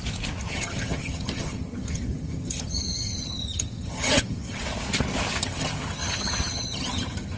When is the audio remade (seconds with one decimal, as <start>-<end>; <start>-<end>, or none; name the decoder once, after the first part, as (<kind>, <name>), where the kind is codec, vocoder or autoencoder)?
0.5-4.6 (vocoder, HiFi-GAN); 5.4-7.4